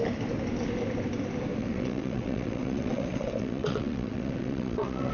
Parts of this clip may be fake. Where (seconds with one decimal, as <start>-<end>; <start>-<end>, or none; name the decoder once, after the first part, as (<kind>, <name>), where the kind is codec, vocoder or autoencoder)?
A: 1.6-5.1 (vocoder, WaveNeXt)